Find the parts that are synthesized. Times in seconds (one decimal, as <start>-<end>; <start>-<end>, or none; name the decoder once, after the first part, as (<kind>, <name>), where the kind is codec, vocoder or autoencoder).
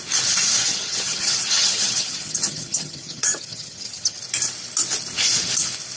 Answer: 0.6-4.2 (vocoder, HiFi-GAN)